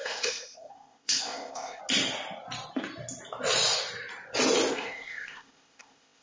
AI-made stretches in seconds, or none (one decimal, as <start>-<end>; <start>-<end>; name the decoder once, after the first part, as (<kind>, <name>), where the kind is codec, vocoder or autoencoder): 0.0-1.8 (codec, ZipCodec); 4.7-6.2